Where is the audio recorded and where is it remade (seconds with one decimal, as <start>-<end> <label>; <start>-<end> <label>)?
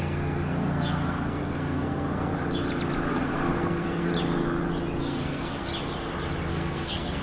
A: 0.0-2.3 remade; 2.3-3.1 recorded; 3.1-4.1 remade; 4.1-5.0 recorded; 5.0-5.7 remade; 5.7-6.5 recorded; 6.5-7.2 remade